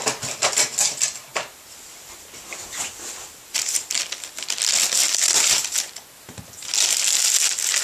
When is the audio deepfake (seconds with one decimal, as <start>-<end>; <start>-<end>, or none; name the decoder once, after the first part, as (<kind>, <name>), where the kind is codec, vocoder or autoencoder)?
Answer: 1.3-4.0 (vocoder, BigVGAN v2); 5.0-5.9